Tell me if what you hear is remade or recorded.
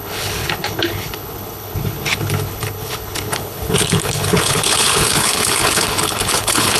remade